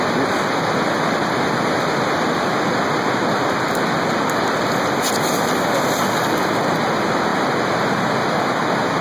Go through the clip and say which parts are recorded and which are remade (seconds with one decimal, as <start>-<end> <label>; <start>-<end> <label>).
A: 0.0-9.0 recorded